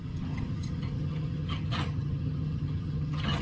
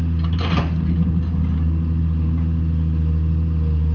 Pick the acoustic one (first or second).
second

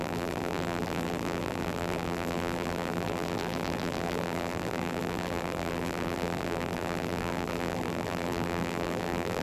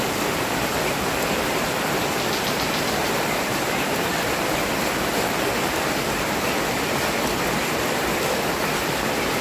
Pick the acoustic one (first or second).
second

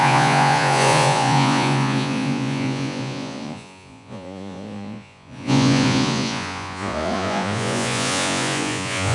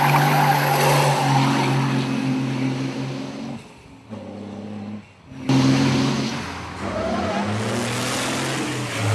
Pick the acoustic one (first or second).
second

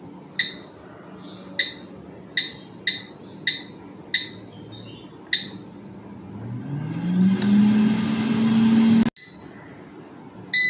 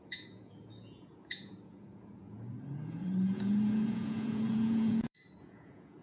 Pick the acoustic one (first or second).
first